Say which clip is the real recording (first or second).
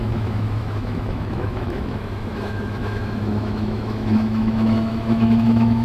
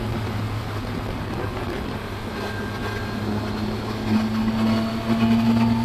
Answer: second